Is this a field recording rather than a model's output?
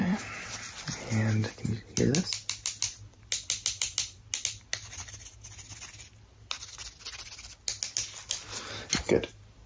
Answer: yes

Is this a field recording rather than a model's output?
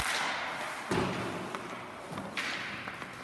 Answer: yes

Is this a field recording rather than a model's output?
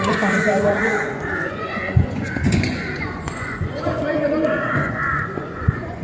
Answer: no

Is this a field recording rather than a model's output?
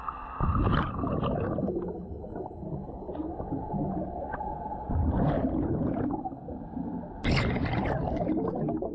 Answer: yes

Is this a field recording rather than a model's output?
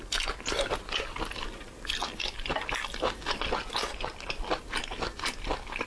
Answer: yes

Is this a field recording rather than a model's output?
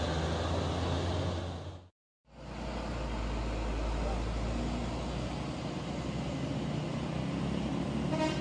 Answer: yes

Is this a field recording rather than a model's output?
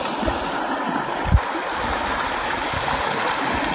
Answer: yes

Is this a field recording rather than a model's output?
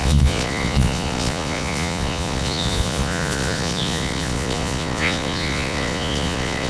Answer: no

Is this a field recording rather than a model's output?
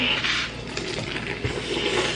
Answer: yes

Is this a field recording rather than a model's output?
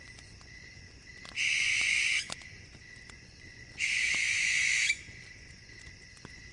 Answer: no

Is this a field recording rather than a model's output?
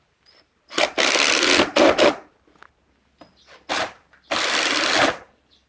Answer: yes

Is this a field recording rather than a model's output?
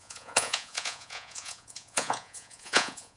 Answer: no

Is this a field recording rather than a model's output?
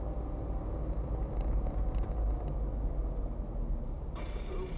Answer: yes